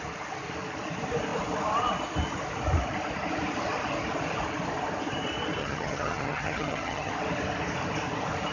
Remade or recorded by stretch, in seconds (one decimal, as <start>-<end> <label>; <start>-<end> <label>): 0.0-5.6 recorded; 5.6-7.1 remade; 7.1-8.5 recorded